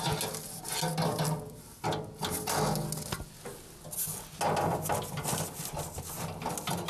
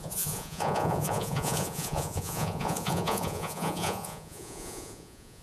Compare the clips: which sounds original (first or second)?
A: first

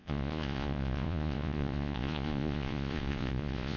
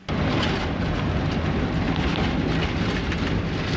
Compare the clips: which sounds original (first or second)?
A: second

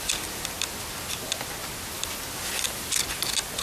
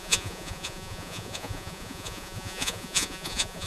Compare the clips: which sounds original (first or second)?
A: first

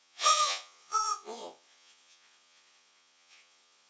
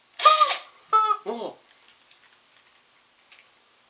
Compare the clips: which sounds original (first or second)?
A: second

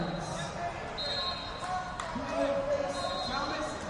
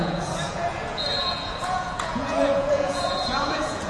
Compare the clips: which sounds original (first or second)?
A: first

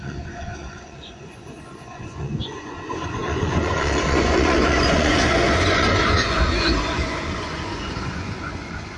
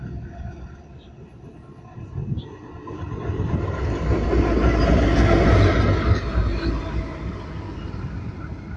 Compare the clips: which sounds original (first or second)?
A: second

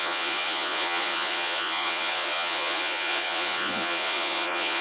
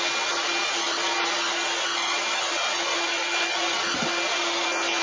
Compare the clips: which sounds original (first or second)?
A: second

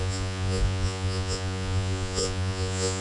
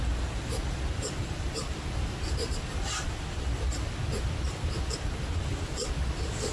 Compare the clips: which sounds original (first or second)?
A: second